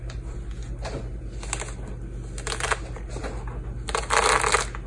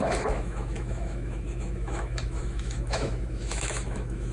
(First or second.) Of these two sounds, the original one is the first